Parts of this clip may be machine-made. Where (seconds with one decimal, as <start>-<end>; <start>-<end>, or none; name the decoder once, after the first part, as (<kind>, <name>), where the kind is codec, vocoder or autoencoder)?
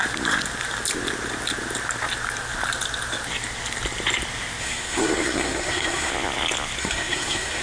4.6-6.1 (codec, SNAC); 6.8-7.6